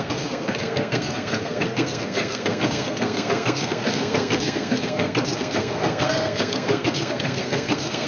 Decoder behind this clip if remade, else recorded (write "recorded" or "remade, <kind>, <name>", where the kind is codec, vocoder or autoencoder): remade, codec, SNAC